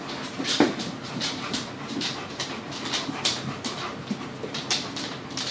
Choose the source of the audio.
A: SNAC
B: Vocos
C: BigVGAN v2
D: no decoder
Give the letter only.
C